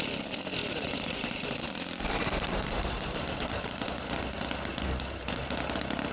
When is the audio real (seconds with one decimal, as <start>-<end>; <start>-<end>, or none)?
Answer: 0.0-0.6; 3.6-4.7; 5.4-6.1